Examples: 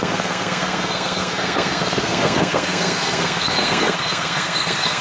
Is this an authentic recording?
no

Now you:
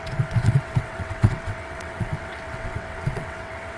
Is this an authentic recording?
no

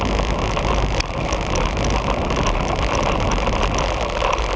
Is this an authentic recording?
yes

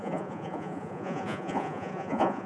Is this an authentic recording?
no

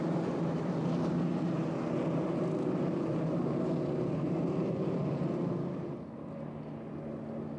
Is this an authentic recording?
yes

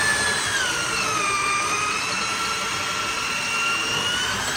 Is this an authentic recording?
yes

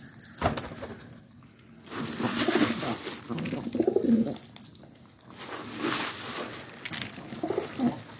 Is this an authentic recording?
yes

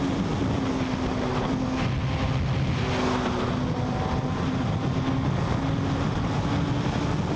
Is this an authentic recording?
yes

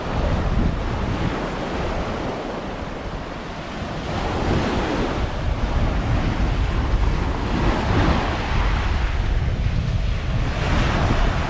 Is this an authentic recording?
yes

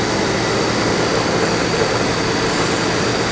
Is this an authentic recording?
yes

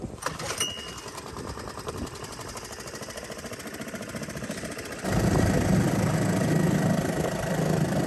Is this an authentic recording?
yes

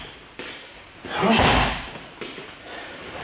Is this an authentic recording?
yes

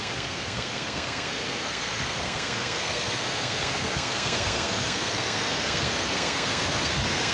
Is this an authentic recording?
no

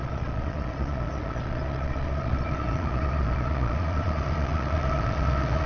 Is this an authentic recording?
no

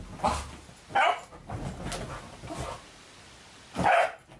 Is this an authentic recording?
yes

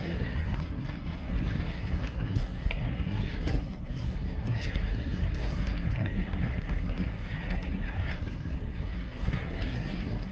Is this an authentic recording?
no